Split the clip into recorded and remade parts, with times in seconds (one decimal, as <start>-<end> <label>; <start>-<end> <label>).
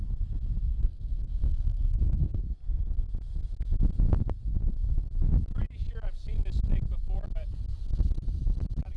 0.0-0.7 recorded; 0.7-2.4 remade; 2.4-9.0 recorded